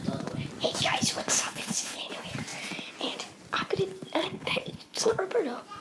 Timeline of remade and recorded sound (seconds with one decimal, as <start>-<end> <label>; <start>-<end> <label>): 0.0-1.2 recorded; 1.2-2.1 remade; 2.1-4.2 recorded; 4.2-5.1 remade; 5.1-5.8 recorded